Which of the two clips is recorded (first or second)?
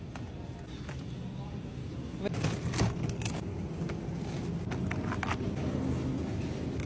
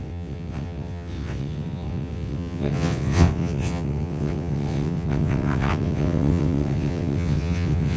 first